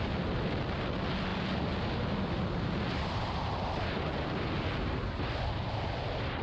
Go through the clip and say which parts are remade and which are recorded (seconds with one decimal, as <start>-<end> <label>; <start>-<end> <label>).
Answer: 0.0-6.4 recorded